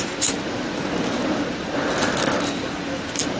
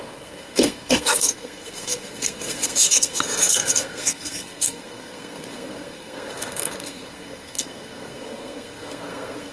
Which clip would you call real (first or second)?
first